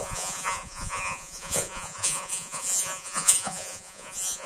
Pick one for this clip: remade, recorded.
remade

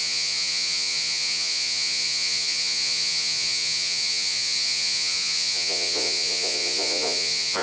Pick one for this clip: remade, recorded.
remade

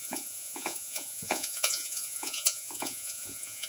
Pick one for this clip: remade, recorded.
remade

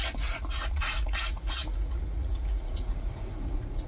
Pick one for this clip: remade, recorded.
remade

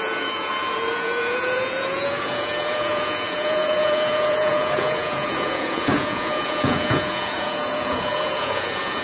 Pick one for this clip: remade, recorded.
remade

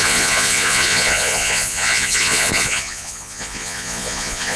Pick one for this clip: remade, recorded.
remade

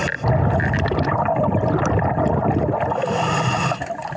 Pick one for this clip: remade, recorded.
recorded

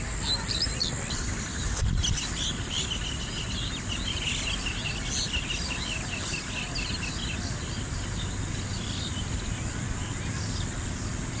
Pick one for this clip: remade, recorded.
recorded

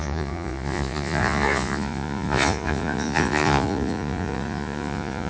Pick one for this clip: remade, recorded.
remade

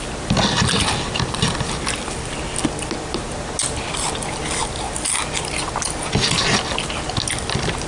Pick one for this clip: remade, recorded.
recorded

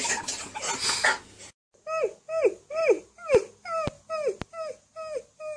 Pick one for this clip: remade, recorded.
recorded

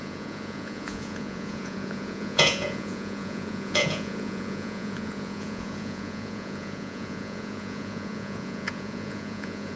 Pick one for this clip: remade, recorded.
remade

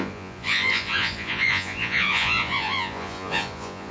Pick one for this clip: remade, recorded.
remade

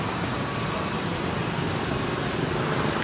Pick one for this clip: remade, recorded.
recorded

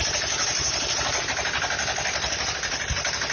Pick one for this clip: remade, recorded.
recorded